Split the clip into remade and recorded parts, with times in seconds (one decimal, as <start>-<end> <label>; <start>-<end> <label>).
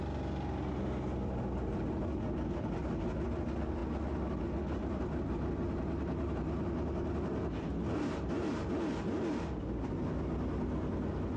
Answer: 0.0-11.4 recorded